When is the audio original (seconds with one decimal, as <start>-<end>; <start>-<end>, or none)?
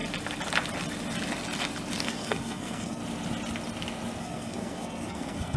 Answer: 0.0-2.0; 3.0-4.2